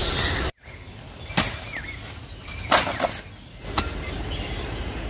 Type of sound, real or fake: real